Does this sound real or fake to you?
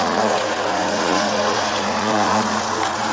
fake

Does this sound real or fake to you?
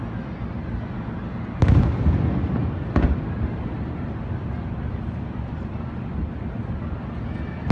real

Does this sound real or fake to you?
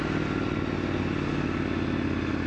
real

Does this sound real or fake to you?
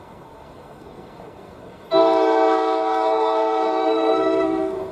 fake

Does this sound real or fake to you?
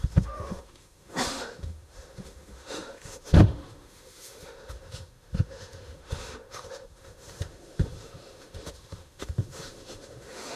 fake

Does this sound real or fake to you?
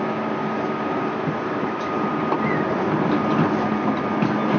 real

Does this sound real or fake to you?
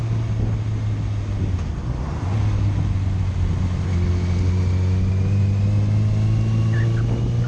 real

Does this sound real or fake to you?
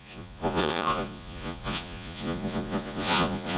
fake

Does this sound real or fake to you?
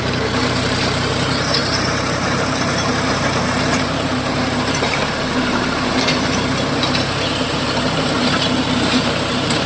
fake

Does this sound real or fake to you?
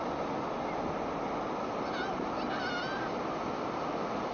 real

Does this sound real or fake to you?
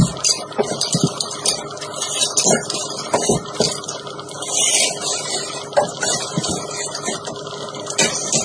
real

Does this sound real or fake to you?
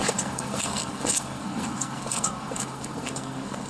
fake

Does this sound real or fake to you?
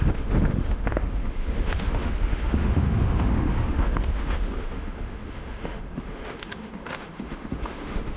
fake